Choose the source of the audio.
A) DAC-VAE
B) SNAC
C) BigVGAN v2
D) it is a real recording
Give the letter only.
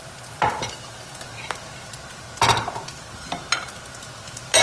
D